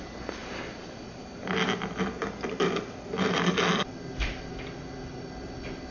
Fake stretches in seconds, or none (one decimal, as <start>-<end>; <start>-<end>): none